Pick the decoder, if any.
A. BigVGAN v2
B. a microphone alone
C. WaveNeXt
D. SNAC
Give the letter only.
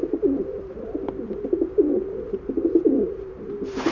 A